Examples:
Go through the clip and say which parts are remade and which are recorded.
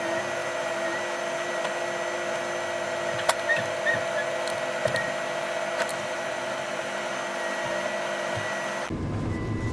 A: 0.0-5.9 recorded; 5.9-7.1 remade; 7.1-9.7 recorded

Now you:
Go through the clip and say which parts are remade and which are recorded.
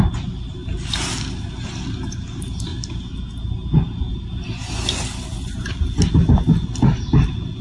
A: 0.0-7.6 recorded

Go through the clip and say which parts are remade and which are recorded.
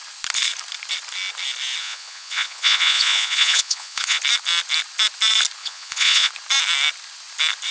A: 0.0-1.8 recorded; 1.8-4.2 remade; 4.2-5.6 recorded; 5.6-6.3 remade; 6.3-7.7 recorded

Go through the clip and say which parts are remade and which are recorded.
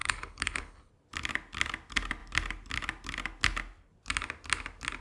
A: 0.0-0.9 remade; 0.9-5.0 recorded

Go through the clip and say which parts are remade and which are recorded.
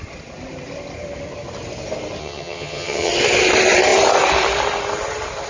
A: 0.0-2.2 recorded; 2.2-3.1 remade; 3.1-5.5 recorded